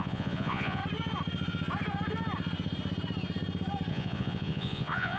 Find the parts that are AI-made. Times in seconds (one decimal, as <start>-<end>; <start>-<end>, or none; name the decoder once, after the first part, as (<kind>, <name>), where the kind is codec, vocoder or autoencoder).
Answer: 0.0-0.8 (vocoder, Vocos); 3.9-5.2

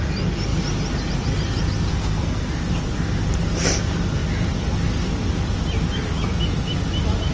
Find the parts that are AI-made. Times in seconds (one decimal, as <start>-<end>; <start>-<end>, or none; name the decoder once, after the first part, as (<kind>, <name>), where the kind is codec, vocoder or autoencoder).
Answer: 1.9-2.5 (codec, SNAC)

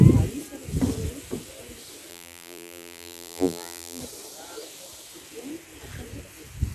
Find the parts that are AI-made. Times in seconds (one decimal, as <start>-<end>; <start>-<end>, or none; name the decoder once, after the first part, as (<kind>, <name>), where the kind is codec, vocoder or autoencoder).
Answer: 2.1-4.0 (vocoder, BigVGAN v2)

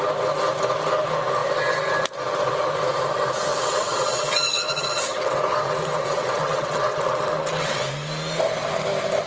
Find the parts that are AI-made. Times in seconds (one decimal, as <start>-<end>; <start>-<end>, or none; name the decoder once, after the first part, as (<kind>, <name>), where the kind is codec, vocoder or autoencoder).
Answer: 3.5-7.9 (vocoder, WaveNeXt)

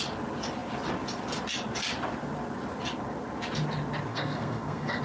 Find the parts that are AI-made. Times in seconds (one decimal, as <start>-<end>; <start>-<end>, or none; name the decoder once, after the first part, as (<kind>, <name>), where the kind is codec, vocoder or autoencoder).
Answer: 4.1-5.0 (codec, SNAC)

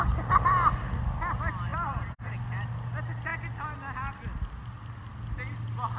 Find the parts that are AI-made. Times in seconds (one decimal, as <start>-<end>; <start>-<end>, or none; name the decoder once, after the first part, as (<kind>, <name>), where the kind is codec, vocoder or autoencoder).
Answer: 1.7-2.3 (vocoder, BigVGAN v2)